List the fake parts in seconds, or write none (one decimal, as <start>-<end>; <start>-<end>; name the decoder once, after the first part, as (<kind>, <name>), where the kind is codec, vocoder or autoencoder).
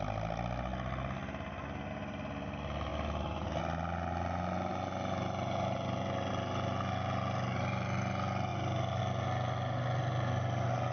none